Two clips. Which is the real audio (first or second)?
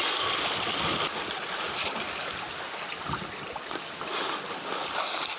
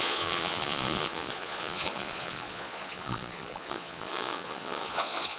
first